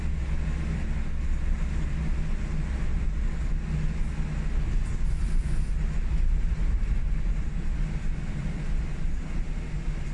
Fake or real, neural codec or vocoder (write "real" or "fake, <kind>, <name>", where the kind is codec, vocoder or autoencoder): real